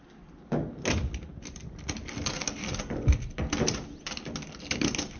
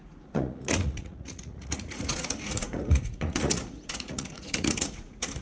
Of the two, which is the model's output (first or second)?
second